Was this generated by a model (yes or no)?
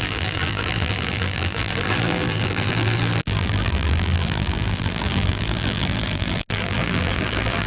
yes